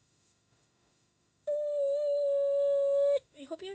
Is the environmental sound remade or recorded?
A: remade